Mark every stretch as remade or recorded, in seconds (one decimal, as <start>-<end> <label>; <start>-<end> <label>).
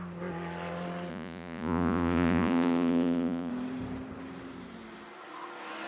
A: 0.0-1.1 recorded; 1.1-3.5 remade; 3.5-5.9 recorded